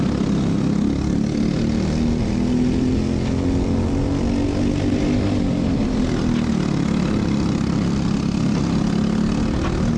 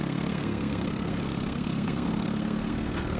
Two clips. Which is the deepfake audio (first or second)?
second